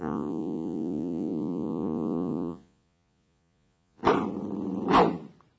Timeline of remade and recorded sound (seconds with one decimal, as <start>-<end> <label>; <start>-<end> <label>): 0.0-4.0 remade; 4.0-5.6 recorded